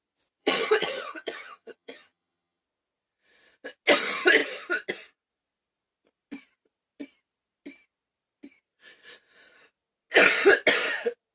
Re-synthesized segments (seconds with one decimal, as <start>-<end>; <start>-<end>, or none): 0.4-2.6